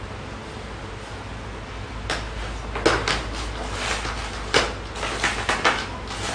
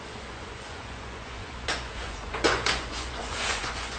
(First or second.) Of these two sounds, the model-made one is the second